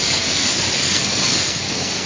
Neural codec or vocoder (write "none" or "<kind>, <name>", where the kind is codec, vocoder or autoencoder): codec, SNAC